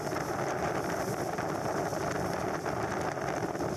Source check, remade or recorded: recorded